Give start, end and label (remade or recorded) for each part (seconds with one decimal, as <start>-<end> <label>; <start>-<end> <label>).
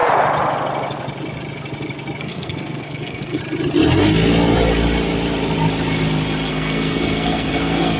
0.0-2.2 recorded; 2.2-3.4 remade; 3.4-6.5 recorded; 6.5-8.0 remade